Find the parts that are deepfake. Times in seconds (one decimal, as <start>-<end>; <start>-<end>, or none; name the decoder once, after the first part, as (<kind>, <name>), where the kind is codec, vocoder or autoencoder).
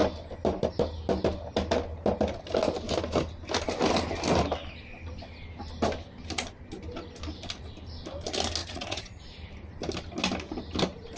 8.6-9.2 (vocoder, Vocos)